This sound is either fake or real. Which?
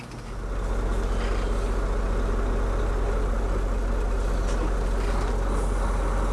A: real